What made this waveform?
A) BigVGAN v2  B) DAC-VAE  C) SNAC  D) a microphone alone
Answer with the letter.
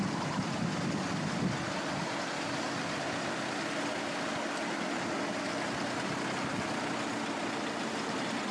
D